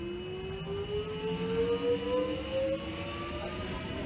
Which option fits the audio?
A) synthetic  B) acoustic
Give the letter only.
B